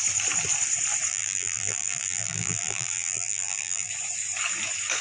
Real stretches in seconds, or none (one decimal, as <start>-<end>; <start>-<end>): 0.0-1.1; 3.9-5.0